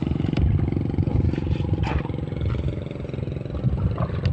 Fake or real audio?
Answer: real